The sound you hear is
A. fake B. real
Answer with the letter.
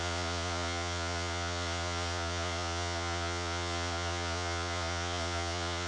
A